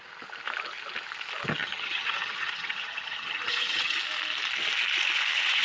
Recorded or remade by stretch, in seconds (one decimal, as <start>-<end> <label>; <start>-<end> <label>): 0.0-1.5 recorded; 1.5-4.0 remade; 4.0-5.6 recorded